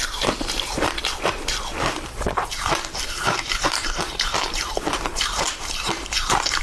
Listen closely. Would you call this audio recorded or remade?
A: remade